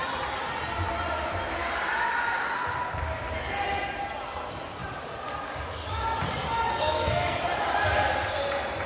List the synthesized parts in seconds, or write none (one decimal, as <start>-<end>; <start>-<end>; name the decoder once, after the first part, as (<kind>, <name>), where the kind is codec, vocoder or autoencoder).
6.7-7.4 (codec, SNAC)